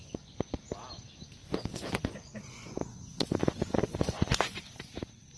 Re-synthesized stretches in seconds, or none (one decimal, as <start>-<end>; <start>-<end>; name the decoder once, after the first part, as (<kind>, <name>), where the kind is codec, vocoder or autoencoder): 0.0-0.6 (vocoder, Vocos); 1.4-4.6